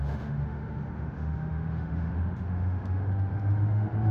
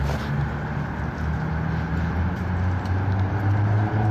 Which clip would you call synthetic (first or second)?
first